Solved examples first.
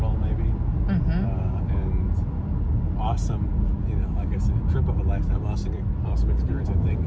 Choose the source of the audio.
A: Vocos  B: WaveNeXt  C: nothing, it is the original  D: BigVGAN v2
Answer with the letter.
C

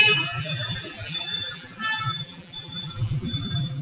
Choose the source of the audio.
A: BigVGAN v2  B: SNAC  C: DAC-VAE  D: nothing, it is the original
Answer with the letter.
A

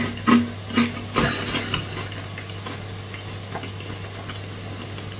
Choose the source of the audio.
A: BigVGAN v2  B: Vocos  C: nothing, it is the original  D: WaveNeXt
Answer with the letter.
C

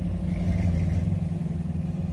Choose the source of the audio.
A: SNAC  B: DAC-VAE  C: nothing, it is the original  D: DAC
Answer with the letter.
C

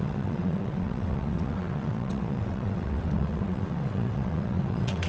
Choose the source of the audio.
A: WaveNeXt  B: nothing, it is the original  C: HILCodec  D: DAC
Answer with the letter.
A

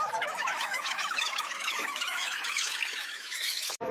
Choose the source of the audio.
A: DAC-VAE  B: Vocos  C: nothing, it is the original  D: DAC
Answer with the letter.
A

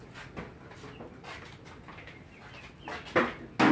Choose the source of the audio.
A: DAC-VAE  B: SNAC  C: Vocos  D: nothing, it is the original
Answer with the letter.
D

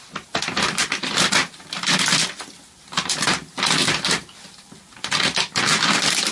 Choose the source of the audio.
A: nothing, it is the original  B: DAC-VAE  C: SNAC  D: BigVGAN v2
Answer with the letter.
A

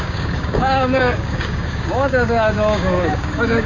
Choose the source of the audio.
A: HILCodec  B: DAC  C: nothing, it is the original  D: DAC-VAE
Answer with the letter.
B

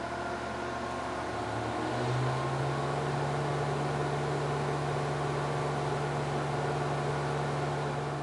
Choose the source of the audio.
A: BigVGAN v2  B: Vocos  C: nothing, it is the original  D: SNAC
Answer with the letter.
C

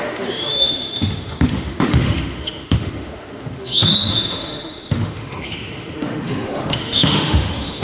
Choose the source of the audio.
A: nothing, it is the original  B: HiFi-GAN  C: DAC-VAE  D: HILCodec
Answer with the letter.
C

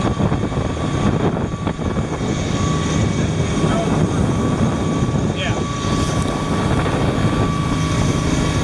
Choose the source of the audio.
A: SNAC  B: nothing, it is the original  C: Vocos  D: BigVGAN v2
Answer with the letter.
B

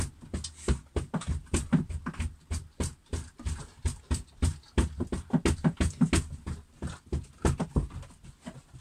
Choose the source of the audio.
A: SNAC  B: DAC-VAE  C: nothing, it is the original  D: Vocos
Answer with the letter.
C